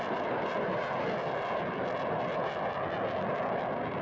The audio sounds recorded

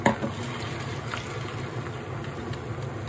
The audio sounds recorded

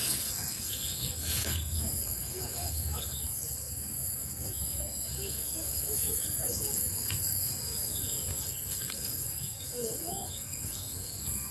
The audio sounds remade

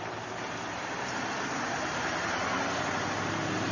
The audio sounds recorded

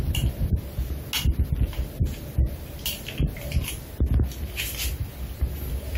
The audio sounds recorded